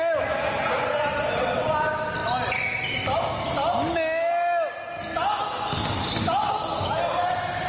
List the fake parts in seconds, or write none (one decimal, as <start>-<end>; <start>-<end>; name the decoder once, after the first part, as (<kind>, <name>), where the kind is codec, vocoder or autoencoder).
none